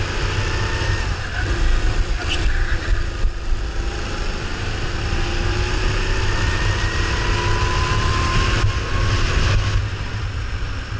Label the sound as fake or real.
real